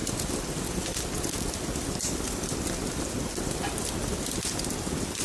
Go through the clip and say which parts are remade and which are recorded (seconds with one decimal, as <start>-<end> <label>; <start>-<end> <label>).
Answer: 0.0-5.2 recorded